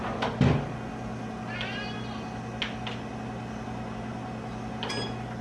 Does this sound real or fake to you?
real